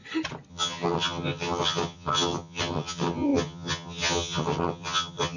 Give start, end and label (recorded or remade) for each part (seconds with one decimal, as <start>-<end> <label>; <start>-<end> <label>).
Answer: 0.0-0.5 recorded; 0.5-5.4 remade